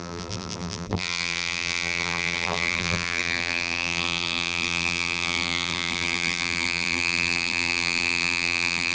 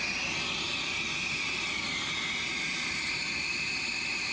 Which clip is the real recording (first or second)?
second